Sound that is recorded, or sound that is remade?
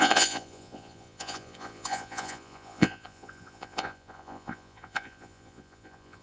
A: remade